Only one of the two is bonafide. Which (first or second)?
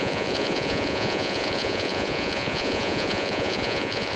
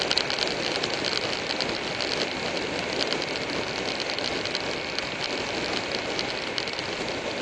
second